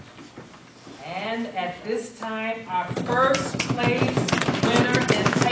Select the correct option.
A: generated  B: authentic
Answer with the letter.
B